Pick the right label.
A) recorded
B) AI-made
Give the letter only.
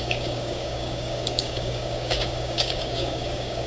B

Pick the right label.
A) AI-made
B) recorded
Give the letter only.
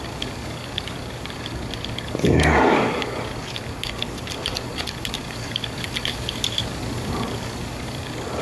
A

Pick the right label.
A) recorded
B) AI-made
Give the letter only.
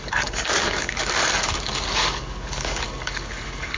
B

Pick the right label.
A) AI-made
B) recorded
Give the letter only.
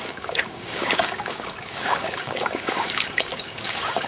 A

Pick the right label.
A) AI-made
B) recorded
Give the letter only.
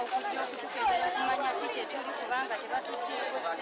B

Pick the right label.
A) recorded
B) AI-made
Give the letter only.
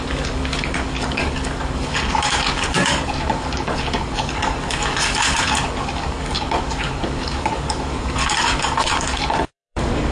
B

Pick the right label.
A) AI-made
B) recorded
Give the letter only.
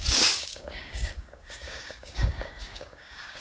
A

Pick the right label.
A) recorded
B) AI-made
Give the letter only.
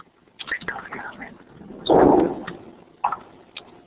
A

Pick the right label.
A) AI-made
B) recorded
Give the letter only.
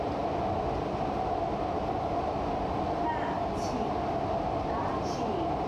B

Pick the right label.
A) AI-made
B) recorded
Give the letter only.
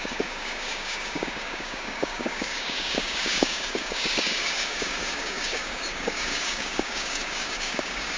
A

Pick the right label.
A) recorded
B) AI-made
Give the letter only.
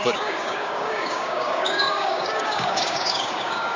B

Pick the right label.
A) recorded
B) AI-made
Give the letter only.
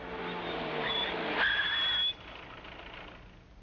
A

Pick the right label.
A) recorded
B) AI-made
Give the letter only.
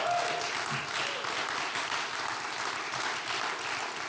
A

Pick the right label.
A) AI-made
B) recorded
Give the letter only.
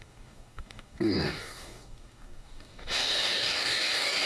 A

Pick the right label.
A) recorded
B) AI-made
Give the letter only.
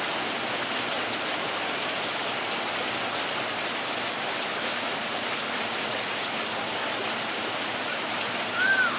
A